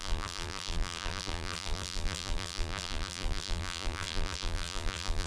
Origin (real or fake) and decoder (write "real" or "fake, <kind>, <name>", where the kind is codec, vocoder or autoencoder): fake, vocoder, BigVGAN v2